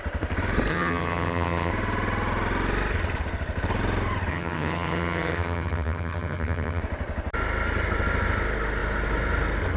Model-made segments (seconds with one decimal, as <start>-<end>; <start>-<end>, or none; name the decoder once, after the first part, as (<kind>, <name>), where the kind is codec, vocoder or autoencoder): 0.7-1.7 (vocoder, HiFi-GAN); 4.3-6.8